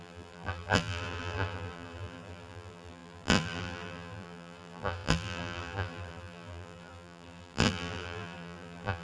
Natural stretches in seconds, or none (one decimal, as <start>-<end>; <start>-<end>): none